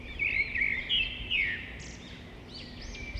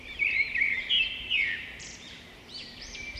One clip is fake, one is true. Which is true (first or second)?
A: first